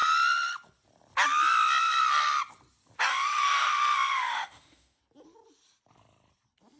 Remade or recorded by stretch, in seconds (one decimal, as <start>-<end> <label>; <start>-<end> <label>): 0.0-3.1 recorded; 3.1-5.0 remade; 5.0-6.8 recorded